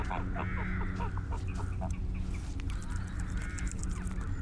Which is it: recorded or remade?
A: recorded